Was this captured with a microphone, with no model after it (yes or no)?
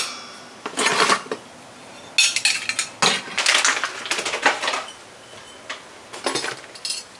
yes